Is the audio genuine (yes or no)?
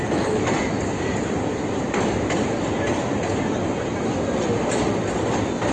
yes